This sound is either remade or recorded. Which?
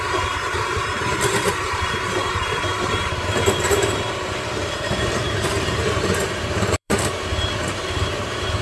remade